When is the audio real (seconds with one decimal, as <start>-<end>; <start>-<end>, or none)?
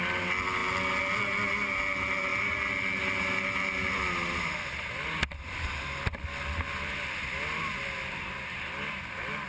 0.0-9.5